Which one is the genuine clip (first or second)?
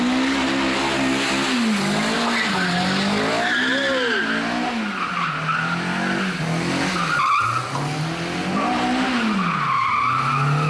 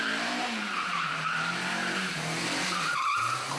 first